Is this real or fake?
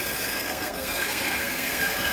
fake